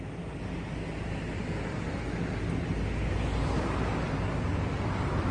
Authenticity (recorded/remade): recorded